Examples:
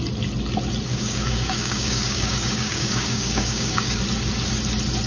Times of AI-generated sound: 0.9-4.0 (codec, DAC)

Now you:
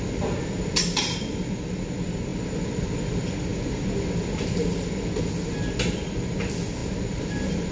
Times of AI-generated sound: none

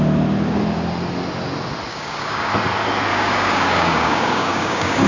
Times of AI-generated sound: 1.9-2.5 (codec, DAC); 3.1-5.1

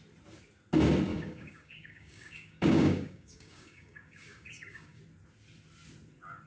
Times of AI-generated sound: 1.1-5.0 (codec, DAC)